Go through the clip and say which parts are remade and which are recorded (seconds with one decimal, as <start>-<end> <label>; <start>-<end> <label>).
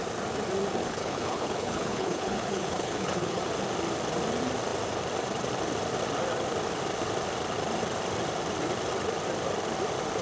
0.0-0.8 recorded; 0.8-3.4 remade; 3.4-10.2 recorded